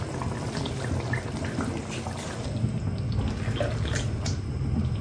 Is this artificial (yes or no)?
no